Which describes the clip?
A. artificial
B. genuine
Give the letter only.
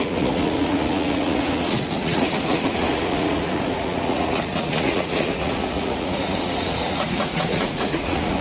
A